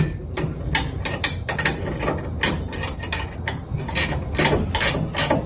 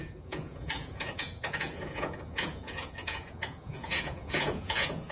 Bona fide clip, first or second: first